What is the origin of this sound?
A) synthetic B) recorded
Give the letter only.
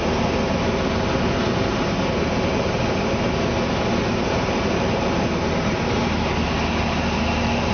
B